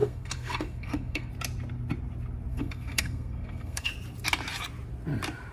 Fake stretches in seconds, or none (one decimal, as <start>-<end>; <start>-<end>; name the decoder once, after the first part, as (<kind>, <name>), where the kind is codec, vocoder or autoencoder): 0.0-1.3 (codec, SNAC); 2.5-3.9